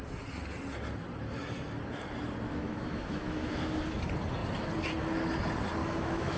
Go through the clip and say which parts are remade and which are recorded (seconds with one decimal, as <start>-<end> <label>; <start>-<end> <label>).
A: 0.0-2.5 recorded; 2.5-3.8 remade; 3.8-5.8 recorded; 5.8-6.4 remade